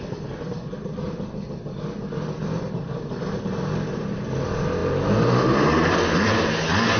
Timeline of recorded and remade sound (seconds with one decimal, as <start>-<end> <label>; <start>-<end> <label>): 0.0-7.0 recorded